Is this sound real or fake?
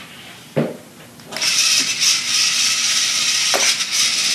real